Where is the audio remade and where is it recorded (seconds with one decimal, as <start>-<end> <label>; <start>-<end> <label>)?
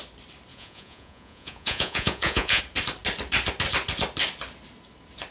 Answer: 0.0-0.5 recorded; 0.5-2.6 remade; 2.6-5.3 recorded